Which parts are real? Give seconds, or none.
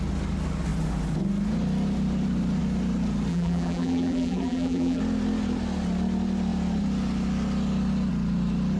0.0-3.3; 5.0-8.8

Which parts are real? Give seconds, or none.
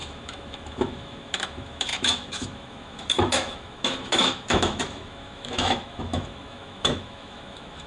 none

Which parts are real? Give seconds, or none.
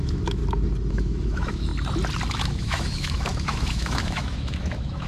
0.4-0.9; 1.7-2.3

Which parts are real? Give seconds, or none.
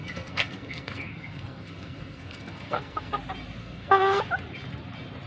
3.2-3.6; 4.2-5.3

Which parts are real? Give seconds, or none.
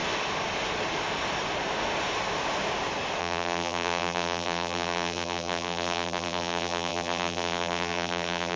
0.0-3.2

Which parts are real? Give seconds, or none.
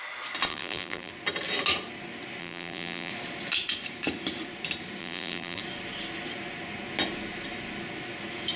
0.0-0.5; 1.1-2.4; 3.1-5.0; 5.6-8.6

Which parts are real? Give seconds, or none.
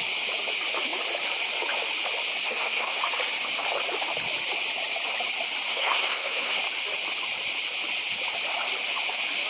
0.0-2.4; 3.0-5.7; 6.6-9.5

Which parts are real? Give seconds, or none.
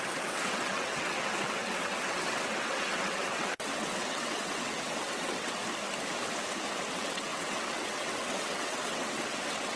5.6-6.9